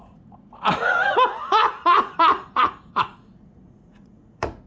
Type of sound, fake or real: fake